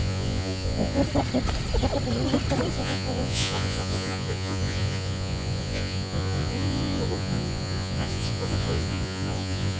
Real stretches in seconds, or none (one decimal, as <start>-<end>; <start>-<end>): 1.0-2.7